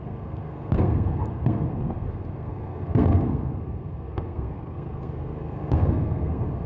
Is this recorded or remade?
remade